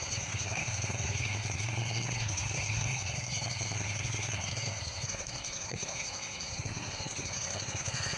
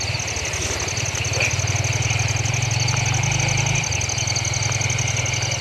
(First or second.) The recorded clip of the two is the second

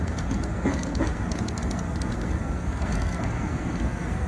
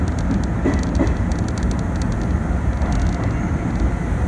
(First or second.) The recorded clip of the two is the second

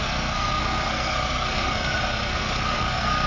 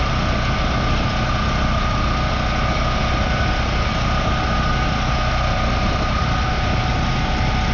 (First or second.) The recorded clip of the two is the second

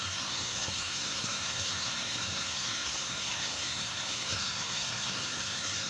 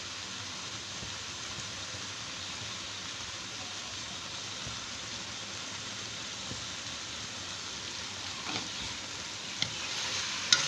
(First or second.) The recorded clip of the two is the second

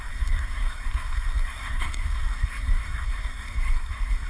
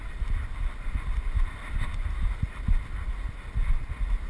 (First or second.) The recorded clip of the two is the second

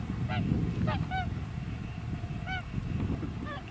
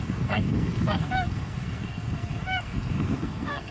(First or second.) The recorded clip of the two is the first